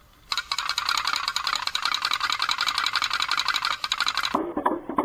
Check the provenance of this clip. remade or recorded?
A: remade